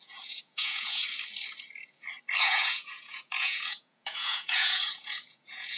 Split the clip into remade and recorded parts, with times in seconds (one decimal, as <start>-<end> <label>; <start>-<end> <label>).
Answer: 0.0-1.0 remade; 1.0-2.4 recorded; 2.4-5.8 remade